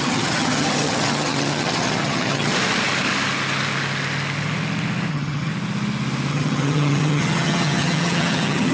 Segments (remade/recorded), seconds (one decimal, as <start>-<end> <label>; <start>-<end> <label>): 0.0-2.5 remade; 2.5-5.1 recorded; 5.1-5.5 remade; 5.5-6.3 recorded; 6.3-8.7 remade